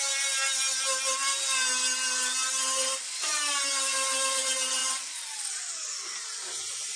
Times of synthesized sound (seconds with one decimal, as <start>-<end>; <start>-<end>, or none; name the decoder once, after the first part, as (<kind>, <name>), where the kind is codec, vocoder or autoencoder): none